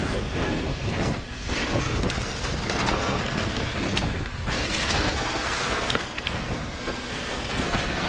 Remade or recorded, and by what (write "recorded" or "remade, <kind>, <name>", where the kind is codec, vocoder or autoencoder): remade, codec, SNAC